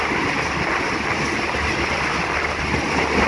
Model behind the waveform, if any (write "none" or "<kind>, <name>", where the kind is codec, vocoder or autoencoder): none